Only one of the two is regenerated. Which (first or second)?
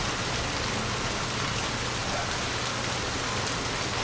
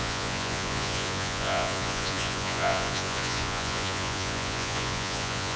second